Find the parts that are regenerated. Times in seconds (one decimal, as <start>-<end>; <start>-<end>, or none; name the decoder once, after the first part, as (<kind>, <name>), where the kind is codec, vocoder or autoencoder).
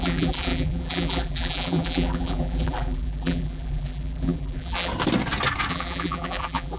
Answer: 0.0-4.9 (vocoder, BigVGAN v2); 5.7-6.8